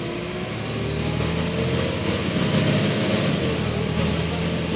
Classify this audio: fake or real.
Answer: real